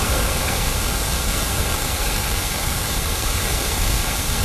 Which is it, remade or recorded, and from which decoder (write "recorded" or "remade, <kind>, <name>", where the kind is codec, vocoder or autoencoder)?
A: remade, codec, SNAC